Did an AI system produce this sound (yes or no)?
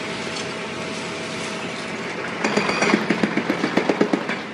no